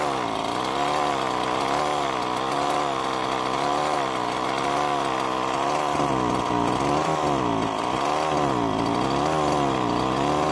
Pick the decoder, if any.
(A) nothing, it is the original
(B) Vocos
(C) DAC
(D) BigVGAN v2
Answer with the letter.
A